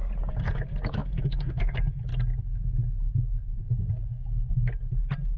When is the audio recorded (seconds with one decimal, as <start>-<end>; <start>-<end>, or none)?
0.0-0.5; 2.1-5.4

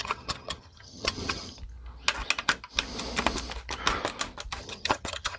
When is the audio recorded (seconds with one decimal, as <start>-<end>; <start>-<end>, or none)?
1.6-4.6

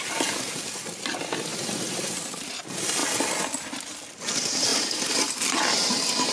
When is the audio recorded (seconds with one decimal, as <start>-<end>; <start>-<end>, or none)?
0.0-6.3

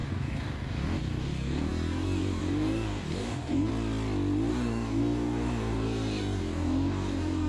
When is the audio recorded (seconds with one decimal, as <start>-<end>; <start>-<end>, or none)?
3.7-4.5

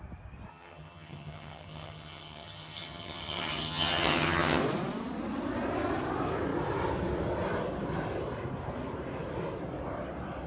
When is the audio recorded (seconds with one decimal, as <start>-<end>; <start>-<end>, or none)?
0.0-0.5; 4.6-10.5

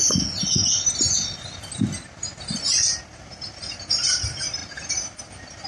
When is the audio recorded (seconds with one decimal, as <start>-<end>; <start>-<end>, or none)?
0.0-5.7

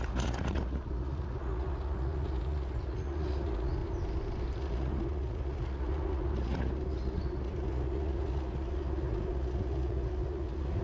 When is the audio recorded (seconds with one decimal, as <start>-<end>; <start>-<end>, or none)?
3.8-4.6

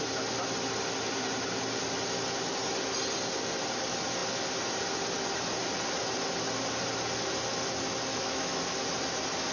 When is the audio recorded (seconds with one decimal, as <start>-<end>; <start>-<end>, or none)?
0.0-8.1; 8.6-9.5